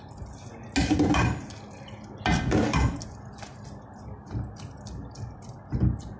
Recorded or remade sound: recorded